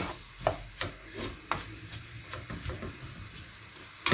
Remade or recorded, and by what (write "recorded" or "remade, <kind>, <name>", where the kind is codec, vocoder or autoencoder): recorded